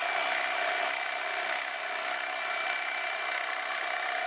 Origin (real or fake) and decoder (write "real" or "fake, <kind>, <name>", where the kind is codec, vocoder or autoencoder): fake, vocoder, BigVGAN v2